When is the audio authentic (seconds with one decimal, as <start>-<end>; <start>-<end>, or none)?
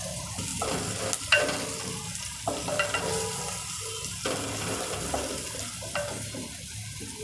0.0-7.2